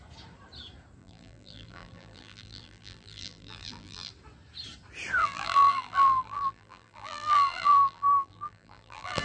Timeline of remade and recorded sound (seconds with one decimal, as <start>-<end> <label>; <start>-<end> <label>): 0.0-1.0 recorded; 1.0-4.1 remade; 4.1-5.2 recorded; 5.2-9.2 remade